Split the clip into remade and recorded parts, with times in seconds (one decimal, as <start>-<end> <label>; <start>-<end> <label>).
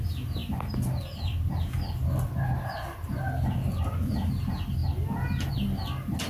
0.0-6.3 recorded